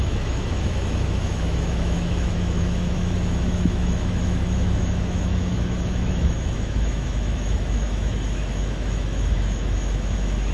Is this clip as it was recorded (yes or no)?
no